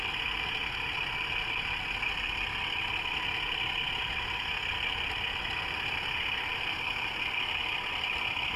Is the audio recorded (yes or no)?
yes